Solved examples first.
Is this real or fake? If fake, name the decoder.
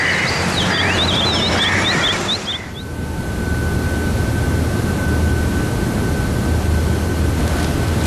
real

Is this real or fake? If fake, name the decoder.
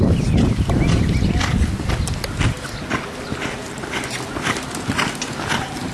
real